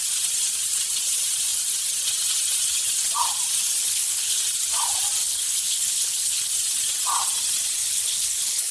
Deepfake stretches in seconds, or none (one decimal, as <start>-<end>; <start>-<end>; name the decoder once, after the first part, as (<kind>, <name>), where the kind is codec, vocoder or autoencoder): 3.8-4.4 (codec, HILCodec); 5.2-6.5; 7.8-8.7